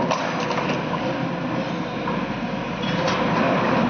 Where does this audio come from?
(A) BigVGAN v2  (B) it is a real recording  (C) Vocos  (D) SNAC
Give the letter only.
B